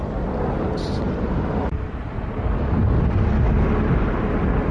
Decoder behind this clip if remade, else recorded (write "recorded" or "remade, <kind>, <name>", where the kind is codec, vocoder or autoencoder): recorded